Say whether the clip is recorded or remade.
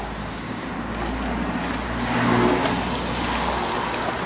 recorded